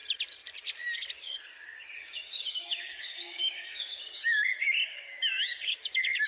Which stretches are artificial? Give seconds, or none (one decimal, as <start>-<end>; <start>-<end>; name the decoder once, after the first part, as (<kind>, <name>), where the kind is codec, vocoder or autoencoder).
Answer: 1.1-6.3 (codec, DAC)